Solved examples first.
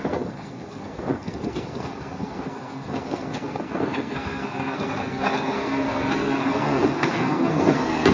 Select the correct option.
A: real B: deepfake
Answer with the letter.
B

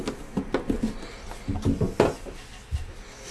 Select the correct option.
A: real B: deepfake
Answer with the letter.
A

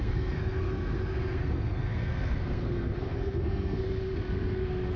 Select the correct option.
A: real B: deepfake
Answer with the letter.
B